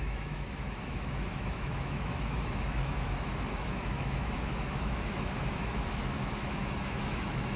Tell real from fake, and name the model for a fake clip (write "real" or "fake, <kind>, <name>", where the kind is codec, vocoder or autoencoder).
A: fake, autoencoder, DAC-VAE